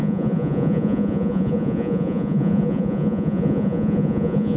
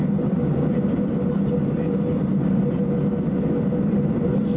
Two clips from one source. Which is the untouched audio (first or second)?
second